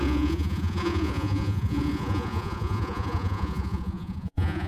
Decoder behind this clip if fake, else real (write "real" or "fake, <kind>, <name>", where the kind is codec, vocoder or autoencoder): fake, vocoder, Vocos